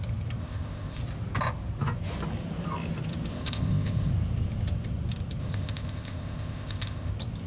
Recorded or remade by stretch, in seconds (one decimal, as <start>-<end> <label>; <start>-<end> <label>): 0.0-0.4 recorded; 0.4-1.0 remade; 1.0-3.3 recorded; 3.3-4.1 remade; 4.1-5.4 recorded; 5.4-7.1 remade; 7.1-7.5 recorded